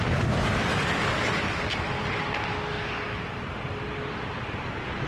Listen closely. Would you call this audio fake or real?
real